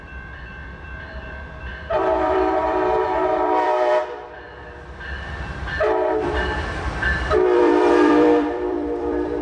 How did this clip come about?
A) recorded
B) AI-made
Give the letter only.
B